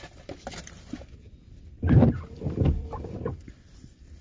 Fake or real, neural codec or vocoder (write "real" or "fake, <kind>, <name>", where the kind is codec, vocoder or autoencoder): real